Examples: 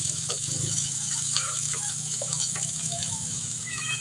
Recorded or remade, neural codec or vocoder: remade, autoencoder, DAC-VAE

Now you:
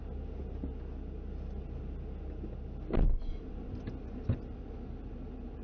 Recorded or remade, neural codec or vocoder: recorded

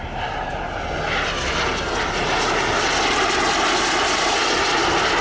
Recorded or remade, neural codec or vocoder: recorded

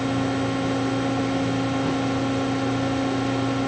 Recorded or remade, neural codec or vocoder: recorded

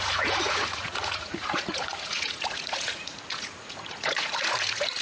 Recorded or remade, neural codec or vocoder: remade, vocoder, Vocos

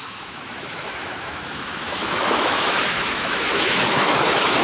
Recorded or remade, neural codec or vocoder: remade, autoencoder, DAC-VAE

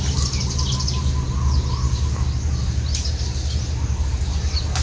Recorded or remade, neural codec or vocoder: recorded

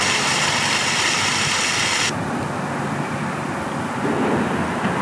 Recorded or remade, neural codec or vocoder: recorded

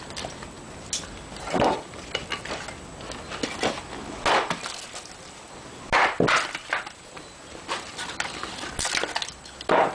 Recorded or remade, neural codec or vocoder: recorded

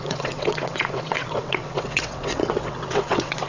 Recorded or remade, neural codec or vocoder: remade, vocoder, WaveNeXt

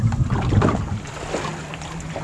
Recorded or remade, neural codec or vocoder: recorded